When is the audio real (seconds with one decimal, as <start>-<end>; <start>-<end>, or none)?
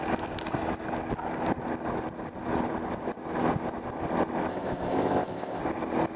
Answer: 0.0-4.5; 5.6-6.2